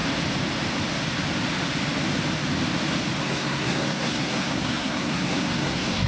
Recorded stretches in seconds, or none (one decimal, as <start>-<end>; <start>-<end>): 0.0-3.2